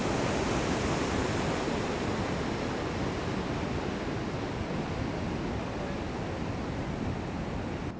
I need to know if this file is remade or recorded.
recorded